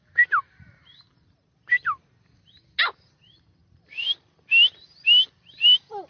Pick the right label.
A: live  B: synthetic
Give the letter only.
A